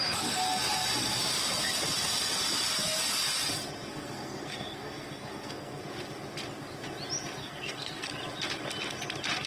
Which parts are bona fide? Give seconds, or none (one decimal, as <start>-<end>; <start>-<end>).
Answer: 0.0-3.9; 5.8-7.4; 8.1-9.5